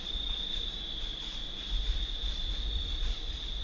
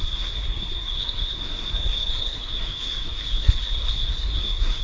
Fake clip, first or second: second